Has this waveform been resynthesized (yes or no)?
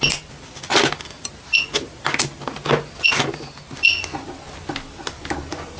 no